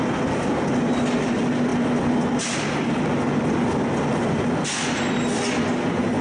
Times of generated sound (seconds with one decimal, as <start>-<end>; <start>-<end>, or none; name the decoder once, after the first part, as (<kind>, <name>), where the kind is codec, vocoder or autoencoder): none